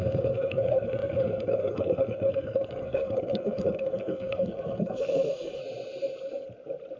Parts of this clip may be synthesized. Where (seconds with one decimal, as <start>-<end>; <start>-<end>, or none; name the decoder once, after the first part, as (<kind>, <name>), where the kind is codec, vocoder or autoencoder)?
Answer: 0.0-5.6 (codec, SNAC)